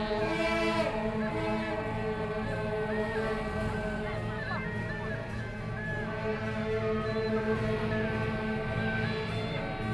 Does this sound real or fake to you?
real